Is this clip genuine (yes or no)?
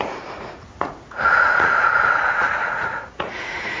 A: no